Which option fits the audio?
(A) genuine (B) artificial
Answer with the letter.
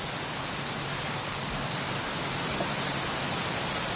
A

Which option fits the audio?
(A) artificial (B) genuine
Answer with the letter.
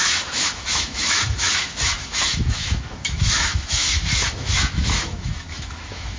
A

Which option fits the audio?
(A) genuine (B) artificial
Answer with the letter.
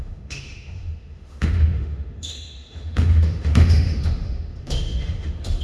B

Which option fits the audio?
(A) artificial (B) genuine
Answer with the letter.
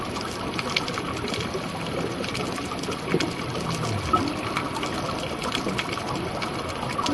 B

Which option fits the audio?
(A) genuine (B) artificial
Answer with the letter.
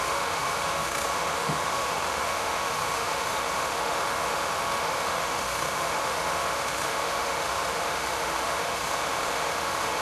B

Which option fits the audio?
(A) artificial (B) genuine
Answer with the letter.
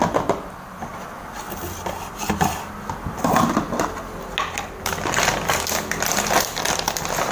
B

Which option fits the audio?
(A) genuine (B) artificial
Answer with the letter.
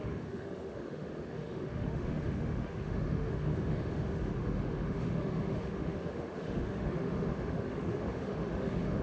B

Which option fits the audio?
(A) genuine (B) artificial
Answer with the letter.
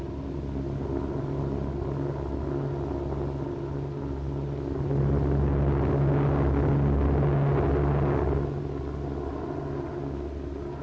A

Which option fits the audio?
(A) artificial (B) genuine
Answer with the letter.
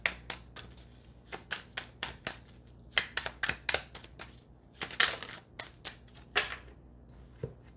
B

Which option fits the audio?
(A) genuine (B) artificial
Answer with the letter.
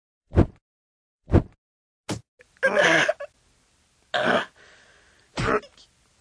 A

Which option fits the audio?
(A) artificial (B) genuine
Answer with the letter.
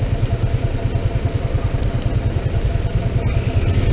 B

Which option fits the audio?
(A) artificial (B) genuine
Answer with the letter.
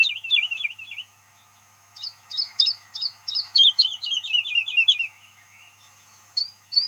A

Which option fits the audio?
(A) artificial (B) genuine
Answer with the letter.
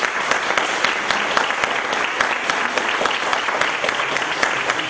B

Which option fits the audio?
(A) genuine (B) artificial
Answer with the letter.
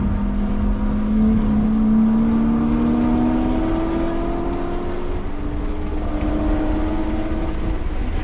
A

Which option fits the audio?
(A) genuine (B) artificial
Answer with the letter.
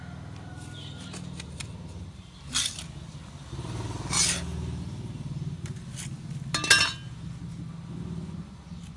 A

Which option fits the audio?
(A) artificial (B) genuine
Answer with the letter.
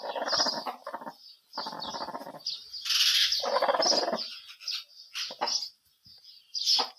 B